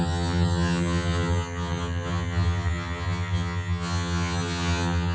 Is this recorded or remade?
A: remade